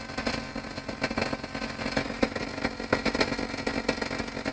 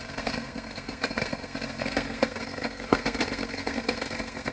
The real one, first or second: first